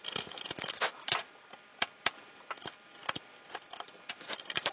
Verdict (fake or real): real